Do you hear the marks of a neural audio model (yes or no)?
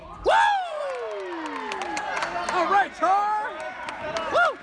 no